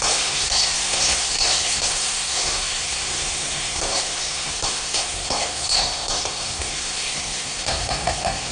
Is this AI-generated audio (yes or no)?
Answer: yes